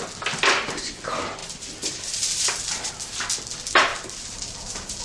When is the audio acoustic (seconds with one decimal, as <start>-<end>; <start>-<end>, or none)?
0.0-1.4; 2.9-3.9